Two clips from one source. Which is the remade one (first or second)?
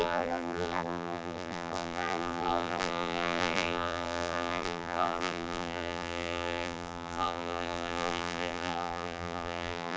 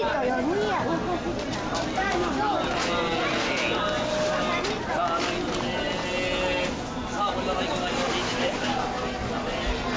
first